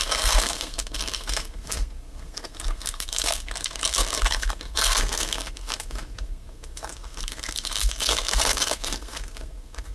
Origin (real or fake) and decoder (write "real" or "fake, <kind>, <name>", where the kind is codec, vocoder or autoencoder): fake, codec, SNAC